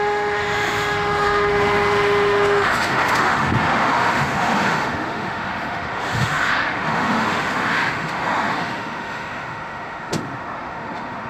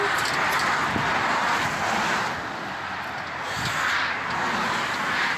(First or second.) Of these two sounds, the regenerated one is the first